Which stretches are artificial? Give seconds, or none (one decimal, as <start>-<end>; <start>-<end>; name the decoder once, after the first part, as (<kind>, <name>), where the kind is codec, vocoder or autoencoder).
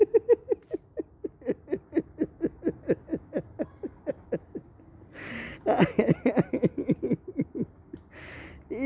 none